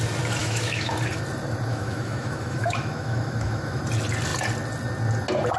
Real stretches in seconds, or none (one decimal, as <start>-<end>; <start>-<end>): 0.0-0.4; 0.9-1.7; 3.8-5.6